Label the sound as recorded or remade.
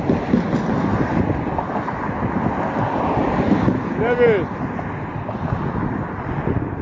recorded